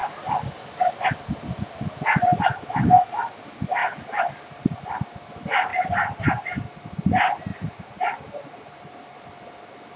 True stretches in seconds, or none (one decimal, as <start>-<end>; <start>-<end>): 0.0-3.8; 4.8-5.7; 6.5-7.5; 9.2-10.0